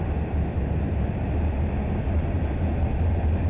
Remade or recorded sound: recorded